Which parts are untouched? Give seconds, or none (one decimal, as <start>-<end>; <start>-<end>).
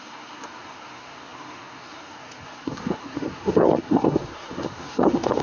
none